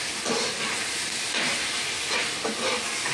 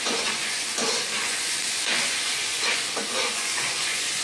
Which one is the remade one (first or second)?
second